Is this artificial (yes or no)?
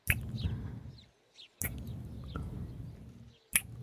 no